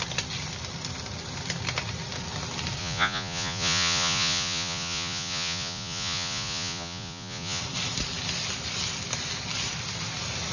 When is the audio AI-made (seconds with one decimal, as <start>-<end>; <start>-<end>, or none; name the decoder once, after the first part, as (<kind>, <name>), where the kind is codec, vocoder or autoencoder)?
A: 2.8-7.6 (vocoder, Vocos)